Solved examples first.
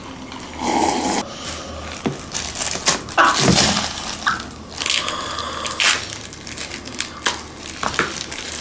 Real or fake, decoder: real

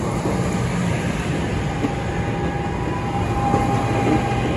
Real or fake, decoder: real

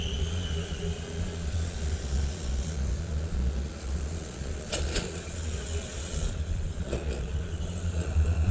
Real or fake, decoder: fake, vocoder, Vocos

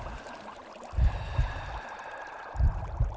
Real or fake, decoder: fake, vocoder, BigVGAN v2